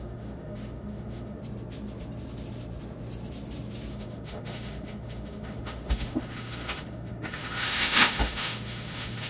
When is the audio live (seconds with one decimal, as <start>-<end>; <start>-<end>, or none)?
1.4-3.9